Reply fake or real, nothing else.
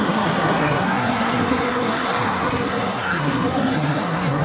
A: fake